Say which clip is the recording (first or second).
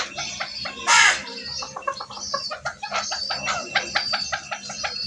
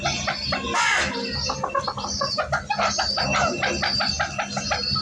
second